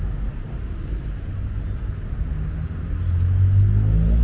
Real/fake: real